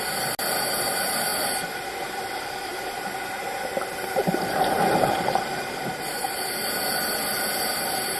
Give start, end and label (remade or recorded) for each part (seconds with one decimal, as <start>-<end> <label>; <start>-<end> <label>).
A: 0.0-1.3 recorded; 1.3-2.3 remade; 2.3-2.7 recorded; 2.7-7.1 remade; 7.1-8.2 recorded